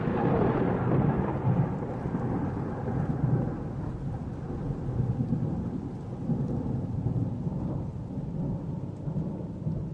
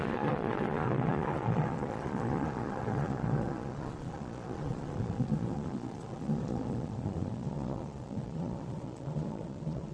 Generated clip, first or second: second